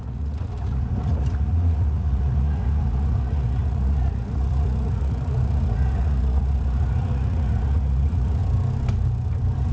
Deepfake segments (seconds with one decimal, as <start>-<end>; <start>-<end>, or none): 0.0-8.4